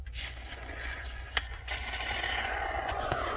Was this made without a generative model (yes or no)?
no